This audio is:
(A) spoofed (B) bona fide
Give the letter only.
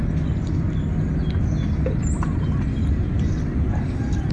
B